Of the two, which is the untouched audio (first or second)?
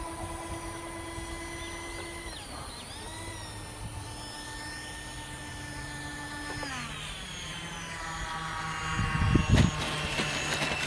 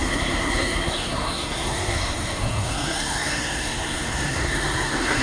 first